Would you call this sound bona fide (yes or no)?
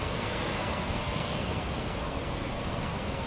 no